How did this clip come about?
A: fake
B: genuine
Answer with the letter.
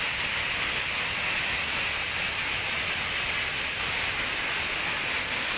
B